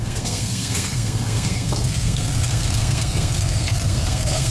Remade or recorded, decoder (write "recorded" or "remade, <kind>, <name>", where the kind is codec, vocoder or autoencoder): remade, codec, SNAC